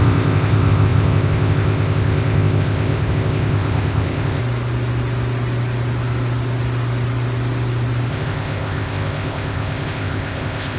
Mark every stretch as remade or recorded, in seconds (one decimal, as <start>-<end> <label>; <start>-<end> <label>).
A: 0.0-4.4 remade; 4.4-8.1 recorded; 8.1-10.8 remade